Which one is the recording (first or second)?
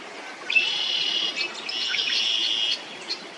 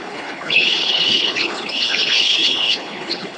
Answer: first